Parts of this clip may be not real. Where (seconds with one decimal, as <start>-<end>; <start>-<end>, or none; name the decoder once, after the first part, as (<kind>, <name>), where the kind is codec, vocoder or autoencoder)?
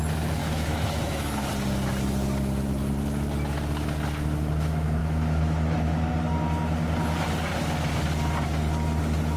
0.4-1.5 (autoencoder, DAC-VAE); 5.0-6.1